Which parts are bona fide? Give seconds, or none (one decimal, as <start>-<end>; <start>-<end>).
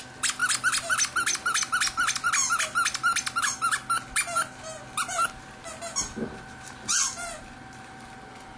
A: 0.0-8.6